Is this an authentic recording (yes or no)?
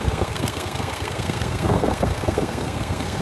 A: no